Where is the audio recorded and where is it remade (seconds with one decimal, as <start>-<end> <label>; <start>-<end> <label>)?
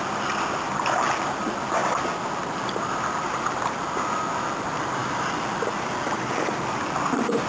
0.0-7.5 remade